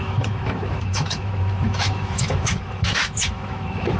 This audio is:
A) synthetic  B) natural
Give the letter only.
A